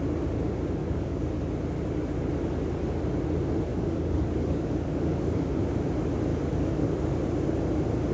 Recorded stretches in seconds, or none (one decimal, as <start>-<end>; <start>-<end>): 0.0-0.8; 1.4-3.7; 5.6-6.3; 6.9-8.1